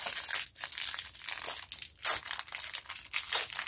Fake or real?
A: real